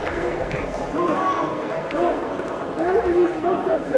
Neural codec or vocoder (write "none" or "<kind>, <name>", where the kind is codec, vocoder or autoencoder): codec, SNAC